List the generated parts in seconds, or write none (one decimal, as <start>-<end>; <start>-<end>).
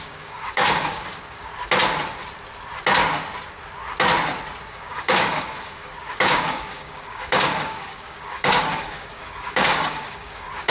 0.0-1.5; 4.7-10.7